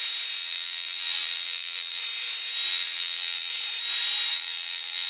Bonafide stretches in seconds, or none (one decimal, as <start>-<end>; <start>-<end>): 0.0-0.4; 2.0-2.7; 3.5-4.3